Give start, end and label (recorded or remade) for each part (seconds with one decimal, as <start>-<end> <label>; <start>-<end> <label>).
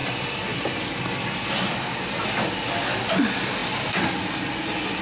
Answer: 0.0-5.0 recorded